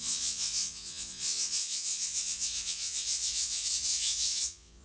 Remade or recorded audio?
remade